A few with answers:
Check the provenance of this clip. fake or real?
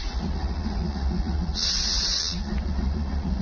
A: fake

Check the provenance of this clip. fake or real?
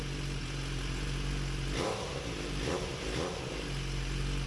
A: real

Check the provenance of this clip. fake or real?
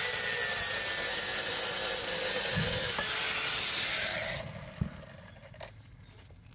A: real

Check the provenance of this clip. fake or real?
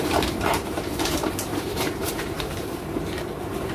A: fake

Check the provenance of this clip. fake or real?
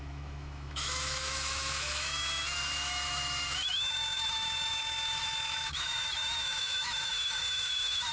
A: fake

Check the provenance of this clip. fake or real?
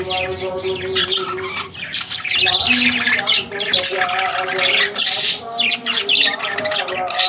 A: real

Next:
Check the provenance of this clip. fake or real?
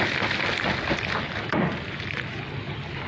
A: real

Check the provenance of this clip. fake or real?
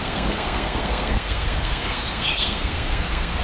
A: fake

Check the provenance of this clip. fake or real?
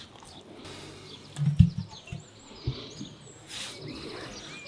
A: real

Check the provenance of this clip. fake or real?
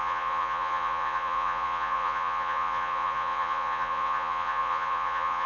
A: fake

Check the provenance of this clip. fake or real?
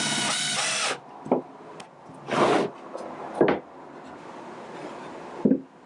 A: real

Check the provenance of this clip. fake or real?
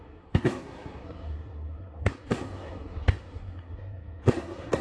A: fake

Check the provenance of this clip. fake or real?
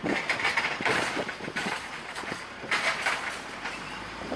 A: fake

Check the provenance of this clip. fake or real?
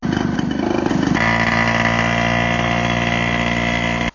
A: real